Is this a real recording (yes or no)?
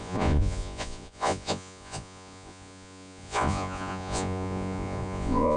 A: no